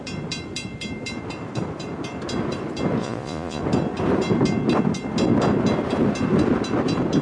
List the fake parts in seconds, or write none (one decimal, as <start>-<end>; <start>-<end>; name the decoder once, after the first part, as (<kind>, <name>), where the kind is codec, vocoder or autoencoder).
3.0-3.6 (vocoder, Vocos)